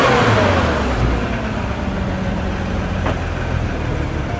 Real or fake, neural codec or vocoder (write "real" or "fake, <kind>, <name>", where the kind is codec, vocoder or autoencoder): fake, vocoder, BigVGAN v2